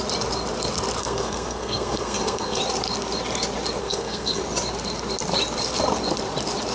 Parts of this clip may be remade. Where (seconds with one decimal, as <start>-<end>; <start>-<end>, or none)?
1.0-2.6; 3.8-4.4